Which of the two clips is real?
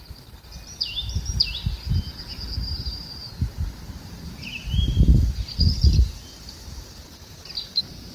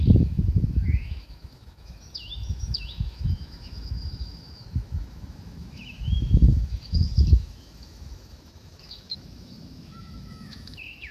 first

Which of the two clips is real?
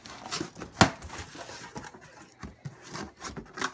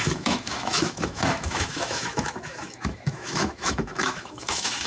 first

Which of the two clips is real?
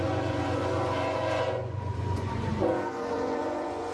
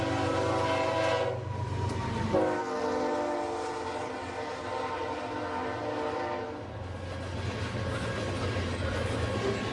second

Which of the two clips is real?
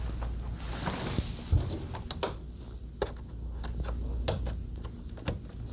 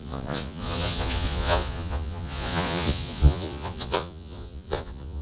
first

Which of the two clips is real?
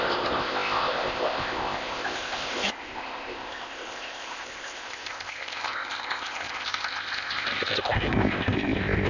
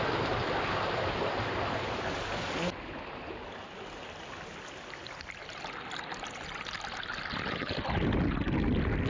second